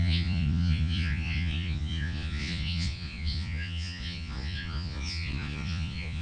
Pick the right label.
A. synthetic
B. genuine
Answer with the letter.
A